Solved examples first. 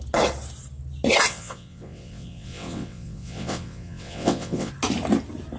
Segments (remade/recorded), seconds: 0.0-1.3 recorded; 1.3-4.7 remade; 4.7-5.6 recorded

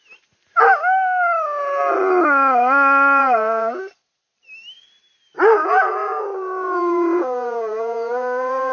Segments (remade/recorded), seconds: 0.0-3.2 recorded; 3.2-3.8 remade; 3.8-5.6 recorded; 5.6-8.7 remade